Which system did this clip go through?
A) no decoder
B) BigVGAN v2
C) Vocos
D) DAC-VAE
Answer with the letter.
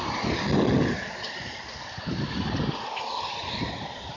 A